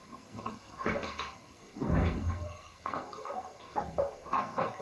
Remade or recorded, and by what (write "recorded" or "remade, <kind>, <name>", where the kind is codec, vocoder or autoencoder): remade, codec, SNAC